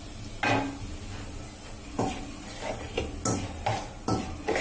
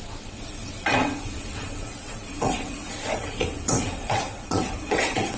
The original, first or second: first